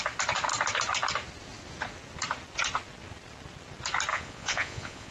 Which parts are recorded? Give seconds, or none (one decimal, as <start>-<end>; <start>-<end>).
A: 0.0-4.1